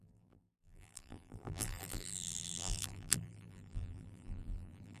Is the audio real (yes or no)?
no